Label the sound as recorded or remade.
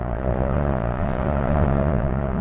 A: remade